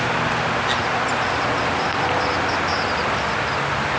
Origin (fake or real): real